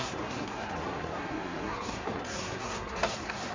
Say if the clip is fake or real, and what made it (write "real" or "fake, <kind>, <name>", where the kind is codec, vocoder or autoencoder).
fake, codec, SNAC